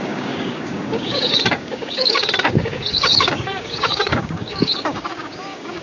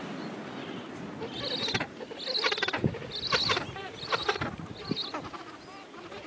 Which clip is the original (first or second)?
second